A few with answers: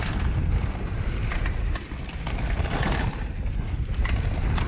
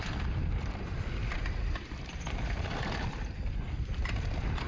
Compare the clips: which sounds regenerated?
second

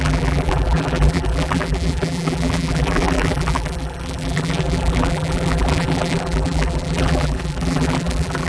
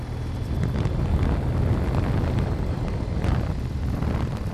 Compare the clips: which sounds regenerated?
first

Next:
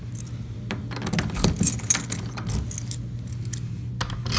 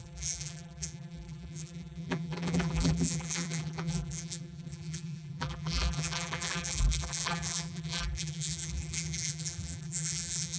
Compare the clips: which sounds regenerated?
second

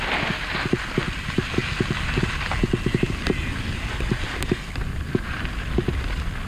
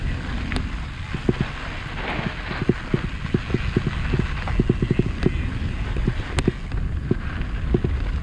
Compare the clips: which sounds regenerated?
first